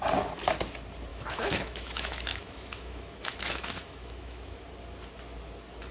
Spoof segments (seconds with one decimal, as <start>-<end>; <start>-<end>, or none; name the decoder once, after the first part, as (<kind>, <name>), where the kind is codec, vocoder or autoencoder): 1.1-4.6 (autoencoder, DAC-VAE)